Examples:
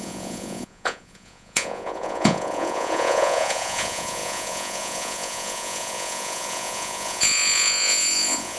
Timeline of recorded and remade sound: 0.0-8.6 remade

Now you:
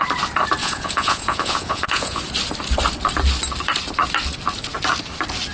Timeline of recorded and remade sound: 0.0-0.6 recorded; 0.6-2.2 remade; 2.2-5.5 recorded

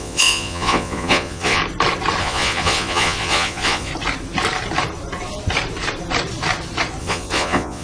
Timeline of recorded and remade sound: 0.0-1.6 remade; 1.6-2.2 recorded; 2.2-3.9 remade; 3.9-7.0 recorded; 7.0-7.8 remade

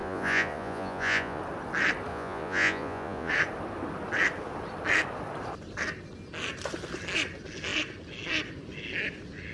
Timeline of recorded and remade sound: 0.0-1.4 remade; 1.4-2.1 recorded; 2.1-3.3 remade; 3.3-9.5 recorded

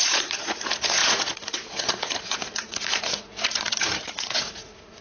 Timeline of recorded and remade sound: 0.0-5.0 remade

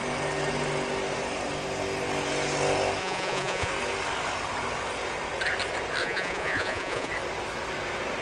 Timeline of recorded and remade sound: 0.0-3.0 recorded; 3.0-3.7 remade; 3.7-6.0 recorded; 6.0-7.1 remade; 7.1-8.2 recorded

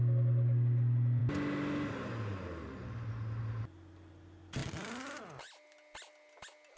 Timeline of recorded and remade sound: 0.0-6.8 recorded